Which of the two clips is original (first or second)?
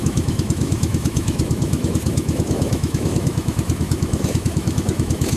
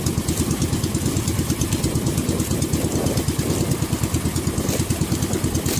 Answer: second